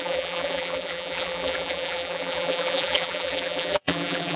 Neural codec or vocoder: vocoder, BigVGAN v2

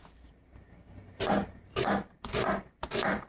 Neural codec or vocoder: vocoder, BigVGAN v2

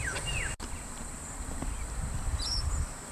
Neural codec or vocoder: vocoder, BigVGAN v2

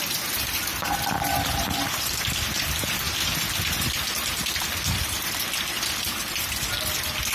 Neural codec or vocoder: vocoder, BigVGAN v2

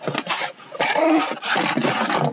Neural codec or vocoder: none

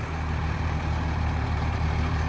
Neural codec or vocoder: vocoder, BigVGAN v2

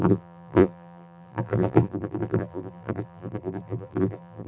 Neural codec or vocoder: vocoder, BigVGAN v2